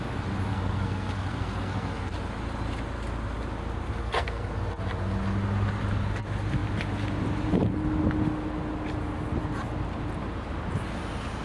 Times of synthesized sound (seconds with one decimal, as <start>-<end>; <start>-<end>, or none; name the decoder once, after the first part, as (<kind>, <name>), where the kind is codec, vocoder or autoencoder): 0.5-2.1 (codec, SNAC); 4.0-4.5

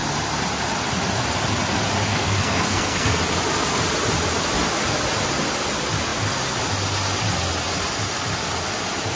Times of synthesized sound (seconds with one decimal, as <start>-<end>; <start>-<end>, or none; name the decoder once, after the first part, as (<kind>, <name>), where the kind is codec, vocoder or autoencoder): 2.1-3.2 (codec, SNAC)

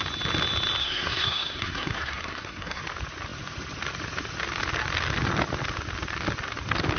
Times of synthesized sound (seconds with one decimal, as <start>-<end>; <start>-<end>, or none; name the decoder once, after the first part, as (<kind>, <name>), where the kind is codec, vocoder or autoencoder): 0.8-2.8 (codec, SNAC)